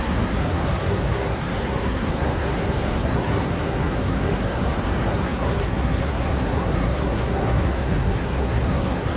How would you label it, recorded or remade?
remade